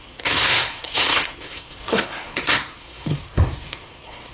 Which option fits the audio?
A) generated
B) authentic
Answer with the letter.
A